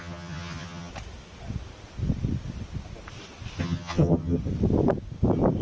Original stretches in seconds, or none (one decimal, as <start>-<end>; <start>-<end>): 0.9-3.6; 4.4-5.6

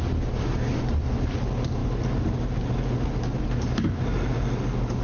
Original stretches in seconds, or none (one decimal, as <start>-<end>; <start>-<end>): 0.0-5.0